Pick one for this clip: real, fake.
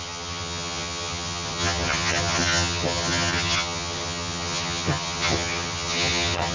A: fake